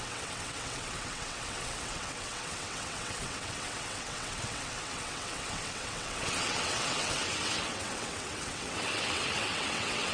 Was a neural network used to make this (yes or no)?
yes